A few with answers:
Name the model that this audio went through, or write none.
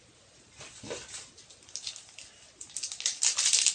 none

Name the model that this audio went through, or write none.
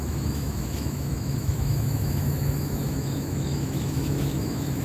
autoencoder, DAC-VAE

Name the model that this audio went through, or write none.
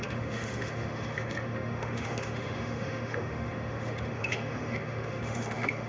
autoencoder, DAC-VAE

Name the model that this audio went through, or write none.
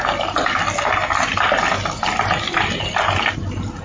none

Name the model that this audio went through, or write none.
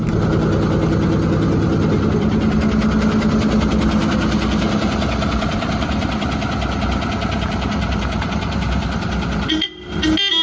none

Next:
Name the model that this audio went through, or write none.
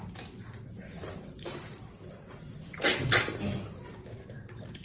none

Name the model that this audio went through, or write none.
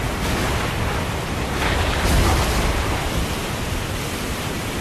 none